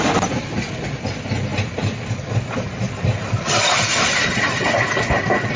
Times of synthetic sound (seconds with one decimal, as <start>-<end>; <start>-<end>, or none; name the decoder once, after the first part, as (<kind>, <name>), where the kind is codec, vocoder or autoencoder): none